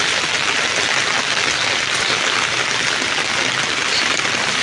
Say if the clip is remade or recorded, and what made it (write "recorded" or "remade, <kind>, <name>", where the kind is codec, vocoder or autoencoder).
recorded